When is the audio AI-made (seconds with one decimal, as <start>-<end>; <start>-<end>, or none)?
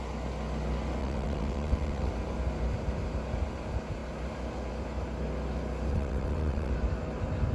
1.0-2.1; 5.9-6.7